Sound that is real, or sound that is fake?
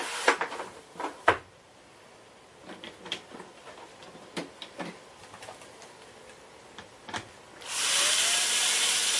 fake